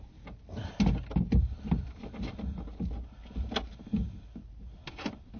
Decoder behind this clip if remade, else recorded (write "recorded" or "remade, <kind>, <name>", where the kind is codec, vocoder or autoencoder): recorded